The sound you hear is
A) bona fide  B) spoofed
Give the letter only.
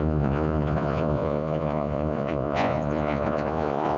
B